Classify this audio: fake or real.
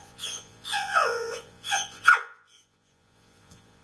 fake